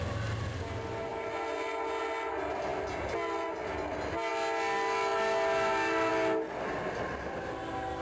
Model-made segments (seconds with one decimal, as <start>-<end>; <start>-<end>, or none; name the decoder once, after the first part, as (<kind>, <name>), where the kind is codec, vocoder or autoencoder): none